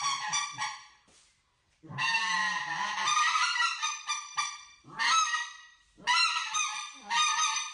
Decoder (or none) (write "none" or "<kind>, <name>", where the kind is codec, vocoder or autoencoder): vocoder, BigVGAN v2